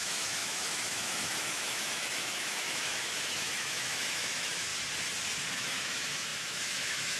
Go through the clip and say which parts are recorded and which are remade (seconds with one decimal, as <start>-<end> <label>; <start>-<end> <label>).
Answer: 0.0-4.7 remade; 4.7-5.5 recorded; 5.5-7.2 remade